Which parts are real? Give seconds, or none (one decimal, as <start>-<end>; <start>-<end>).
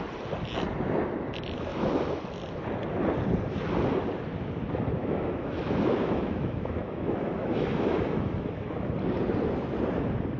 0.0-1.7; 2.2-5.0; 8.9-10.4